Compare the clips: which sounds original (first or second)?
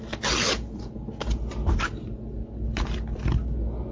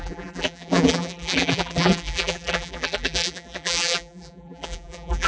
first